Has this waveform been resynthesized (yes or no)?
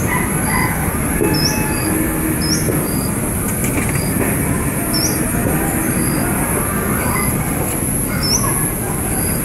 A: no